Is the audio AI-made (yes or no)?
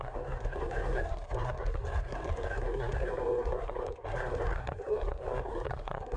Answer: yes